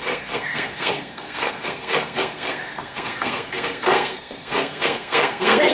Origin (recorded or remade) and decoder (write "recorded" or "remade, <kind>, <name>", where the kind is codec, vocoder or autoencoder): remade, codec, SNAC